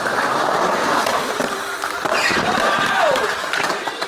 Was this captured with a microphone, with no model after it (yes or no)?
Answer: no